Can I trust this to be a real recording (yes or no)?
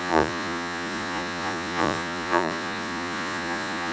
no